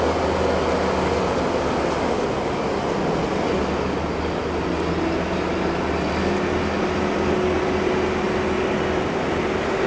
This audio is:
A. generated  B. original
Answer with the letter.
B